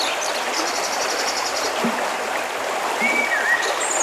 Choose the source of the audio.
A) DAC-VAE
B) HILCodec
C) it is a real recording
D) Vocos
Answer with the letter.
C